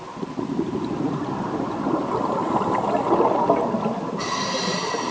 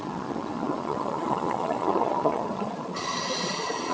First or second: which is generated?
second